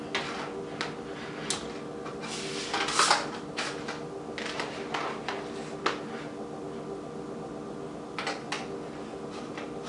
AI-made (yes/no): no